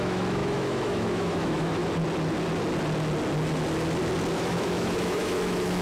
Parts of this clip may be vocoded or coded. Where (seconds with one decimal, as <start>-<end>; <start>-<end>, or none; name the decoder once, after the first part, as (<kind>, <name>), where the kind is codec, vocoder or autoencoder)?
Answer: 0.0-1.8 (autoencoder, DAC-VAE); 4.3-5.8